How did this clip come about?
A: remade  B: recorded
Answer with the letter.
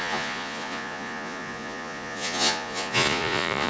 A